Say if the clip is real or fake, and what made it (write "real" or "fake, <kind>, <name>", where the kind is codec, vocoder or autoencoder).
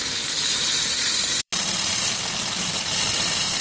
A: fake, vocoder, BigVGAN v2